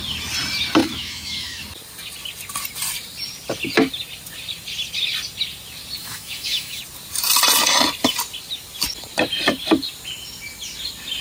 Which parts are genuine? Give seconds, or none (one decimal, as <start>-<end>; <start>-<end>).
0.0-0.8; 1.6-6.0; 6.8-11.2